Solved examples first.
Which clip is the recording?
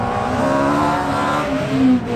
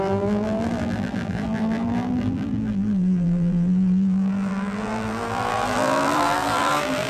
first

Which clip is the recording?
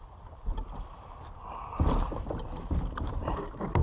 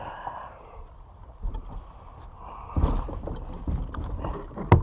second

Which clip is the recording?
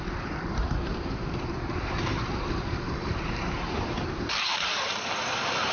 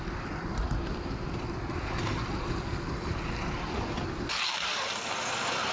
second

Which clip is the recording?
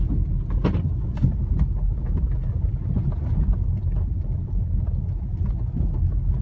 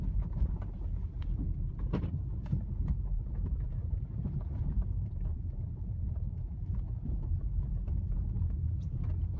first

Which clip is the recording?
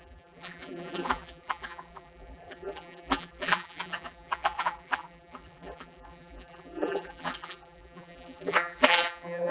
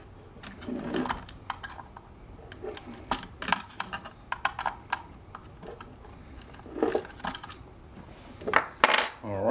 second